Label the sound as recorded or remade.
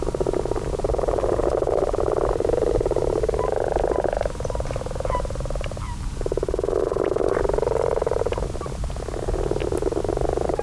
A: recorded